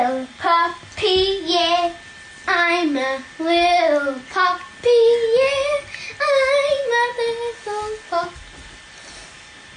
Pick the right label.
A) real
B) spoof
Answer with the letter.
A